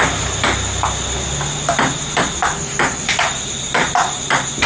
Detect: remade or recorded recorded